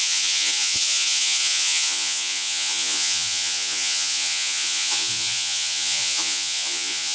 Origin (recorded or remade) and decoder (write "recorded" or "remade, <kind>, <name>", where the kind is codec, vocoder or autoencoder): remade, vocoder, Vocos